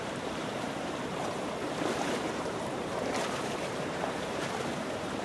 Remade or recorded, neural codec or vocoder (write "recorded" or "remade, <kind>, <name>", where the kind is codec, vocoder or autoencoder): remade, vocoder, BigVGAN v2